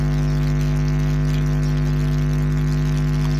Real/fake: real